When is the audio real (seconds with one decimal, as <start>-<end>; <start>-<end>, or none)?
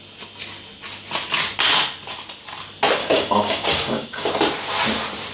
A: 0.0-3.0; 4.3-5.3